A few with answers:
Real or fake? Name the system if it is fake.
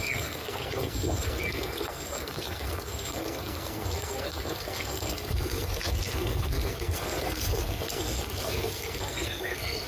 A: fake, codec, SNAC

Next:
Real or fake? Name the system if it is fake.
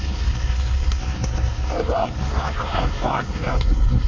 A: fake, codec, SNAC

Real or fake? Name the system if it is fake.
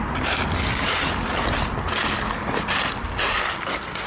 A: real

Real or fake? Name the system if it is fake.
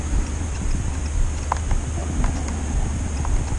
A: real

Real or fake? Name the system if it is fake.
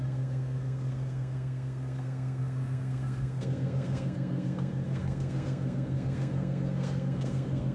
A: fake, codec, SNAC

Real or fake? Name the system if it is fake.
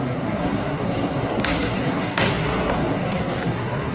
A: fake, codec, SNAC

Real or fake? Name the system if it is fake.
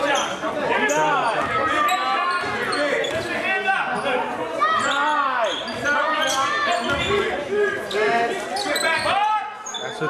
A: real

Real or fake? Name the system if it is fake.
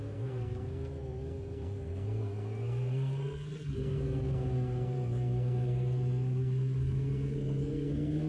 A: fake, codec, SNAC